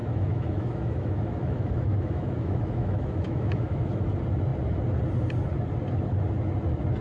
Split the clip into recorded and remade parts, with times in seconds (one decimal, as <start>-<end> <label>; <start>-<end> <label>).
0.0-4.0 remade; 4.0-7.0 recorded